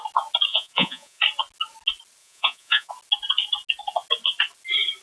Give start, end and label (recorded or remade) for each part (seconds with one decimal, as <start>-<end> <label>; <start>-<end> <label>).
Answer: 0.0-0.5 recorded; 0.5-1.2 remade; 1.2-2.2 recorded; 2.2-2.9 remade; 2.9-5.0 recorded

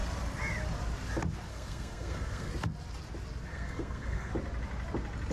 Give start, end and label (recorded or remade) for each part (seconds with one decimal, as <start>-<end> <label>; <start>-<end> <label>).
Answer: 0.0-1.5 recorded; 1.5-2.5 remade; 2.5-3.5 recorded; 3.5-4.3 remade; 4.3-5.3 recorded